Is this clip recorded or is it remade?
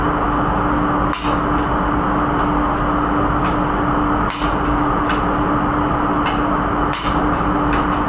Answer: recorded